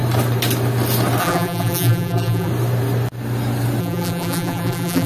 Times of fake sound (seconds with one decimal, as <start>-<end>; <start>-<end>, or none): 1.2-2.5; 3.8-5.1